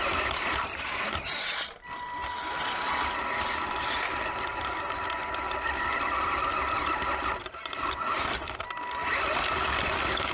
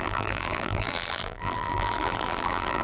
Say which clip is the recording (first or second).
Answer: first